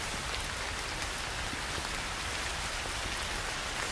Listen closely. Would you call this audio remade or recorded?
recorded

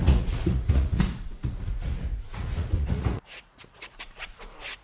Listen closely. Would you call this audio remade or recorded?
remade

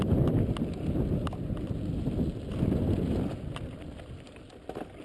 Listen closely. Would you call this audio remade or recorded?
recorded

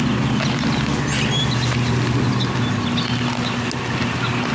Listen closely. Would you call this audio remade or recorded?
recorded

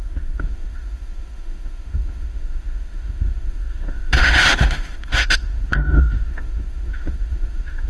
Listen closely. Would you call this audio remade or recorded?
remade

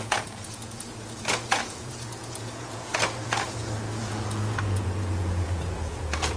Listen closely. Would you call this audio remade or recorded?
remade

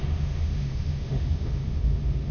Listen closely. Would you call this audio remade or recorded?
remade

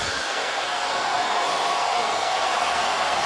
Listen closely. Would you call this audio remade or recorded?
remade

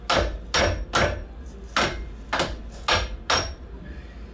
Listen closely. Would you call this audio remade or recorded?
recorded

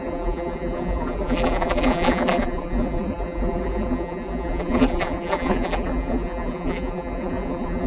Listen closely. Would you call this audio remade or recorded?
remade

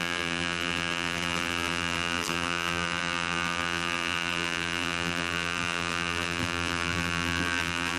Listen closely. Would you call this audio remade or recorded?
remade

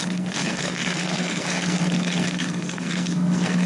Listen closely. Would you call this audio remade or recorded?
remade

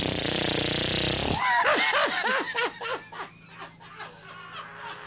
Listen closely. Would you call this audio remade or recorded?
recorded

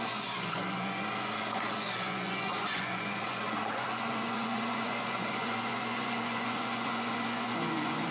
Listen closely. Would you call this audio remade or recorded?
remade